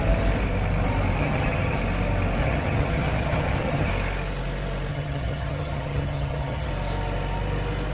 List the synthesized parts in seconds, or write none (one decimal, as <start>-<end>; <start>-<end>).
1.2-1.8; 2.4-3.9; 4.9-6.7